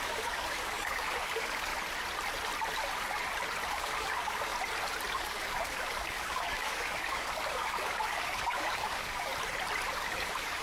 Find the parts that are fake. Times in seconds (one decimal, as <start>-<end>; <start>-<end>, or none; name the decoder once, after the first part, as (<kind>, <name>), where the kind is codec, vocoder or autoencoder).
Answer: 0.0-1.7 (codec, DAC); 3.7-4.5; 5.1-9.3; 9.9-10.6